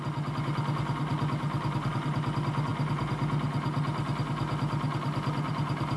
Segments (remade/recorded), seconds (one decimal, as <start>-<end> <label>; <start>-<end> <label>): 0.0-6.0 recorded